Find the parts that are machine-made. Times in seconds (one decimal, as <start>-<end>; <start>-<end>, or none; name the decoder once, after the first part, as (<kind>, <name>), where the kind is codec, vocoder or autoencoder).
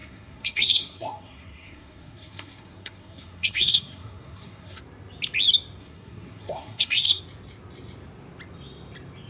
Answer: 0.0-4.8 (codec, SNAC); 5.8-7.2